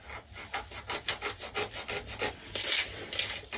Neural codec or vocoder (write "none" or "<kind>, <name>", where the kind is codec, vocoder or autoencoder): none